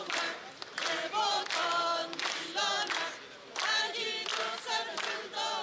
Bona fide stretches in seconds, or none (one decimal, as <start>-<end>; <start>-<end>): 0.0-2.0; 2.6-5.6